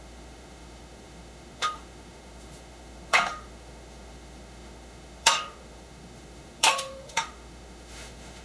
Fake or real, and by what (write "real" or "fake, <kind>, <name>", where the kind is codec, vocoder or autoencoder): fake, autoencoder, DAC-VAE